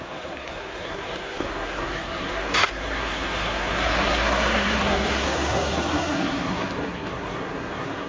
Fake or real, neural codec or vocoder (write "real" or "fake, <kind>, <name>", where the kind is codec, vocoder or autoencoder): fake, codec, SNAC